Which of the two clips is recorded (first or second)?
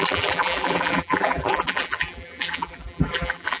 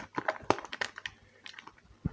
second